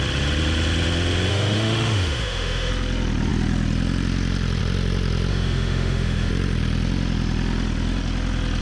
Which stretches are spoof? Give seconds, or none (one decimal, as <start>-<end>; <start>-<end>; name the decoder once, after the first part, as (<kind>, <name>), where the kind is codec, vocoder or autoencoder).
1.3-2.7 (autoencoder, DAC-VAE); 5.3-6.3